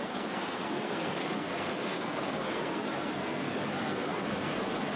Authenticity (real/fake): fake